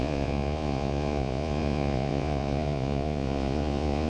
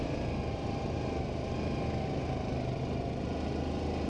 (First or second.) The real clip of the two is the second